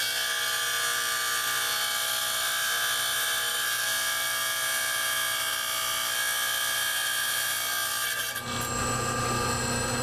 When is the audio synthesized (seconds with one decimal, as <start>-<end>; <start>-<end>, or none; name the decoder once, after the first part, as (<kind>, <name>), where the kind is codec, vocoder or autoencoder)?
none